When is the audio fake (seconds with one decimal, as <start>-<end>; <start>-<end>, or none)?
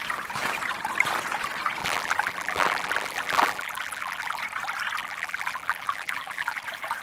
1.8-4.4; 5.0-6.6